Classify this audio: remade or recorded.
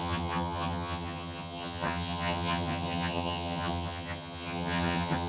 remade